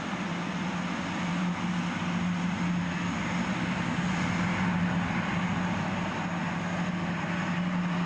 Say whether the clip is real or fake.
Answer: real